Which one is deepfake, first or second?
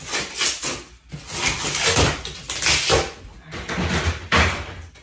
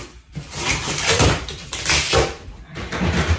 second